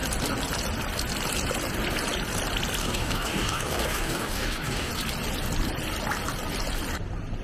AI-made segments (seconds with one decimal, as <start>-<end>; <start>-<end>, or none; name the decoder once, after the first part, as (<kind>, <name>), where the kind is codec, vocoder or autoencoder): 2.8-4.9 (codec, DAC)